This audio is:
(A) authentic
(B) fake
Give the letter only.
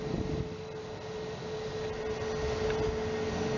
A